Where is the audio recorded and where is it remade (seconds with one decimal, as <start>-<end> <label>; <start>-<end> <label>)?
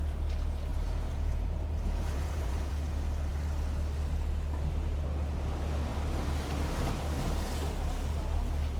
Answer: 0.0-0.7 recorded; 0.7-2.7 remade; 2.7-8.8 recorded